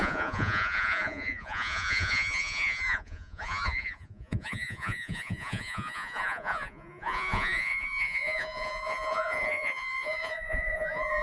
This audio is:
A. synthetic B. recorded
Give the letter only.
A